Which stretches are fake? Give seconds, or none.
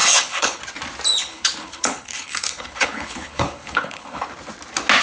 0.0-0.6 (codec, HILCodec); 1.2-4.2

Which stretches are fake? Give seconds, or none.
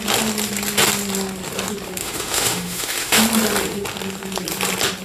2.0-3.2 (autoencoder, DAC-VAE)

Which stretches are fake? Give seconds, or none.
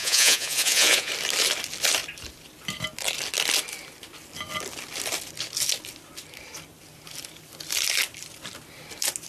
0.0-1.1 (vocoder, Vocos)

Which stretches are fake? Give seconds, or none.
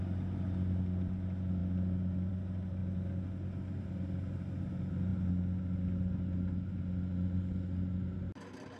none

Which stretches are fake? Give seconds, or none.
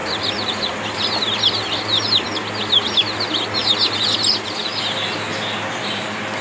none